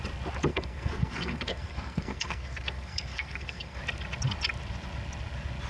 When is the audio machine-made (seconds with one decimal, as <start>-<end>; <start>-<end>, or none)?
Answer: 0.5-3.8